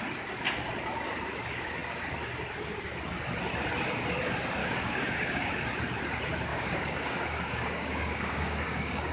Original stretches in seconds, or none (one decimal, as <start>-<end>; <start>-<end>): 0.0-4.6; 5.5-6.5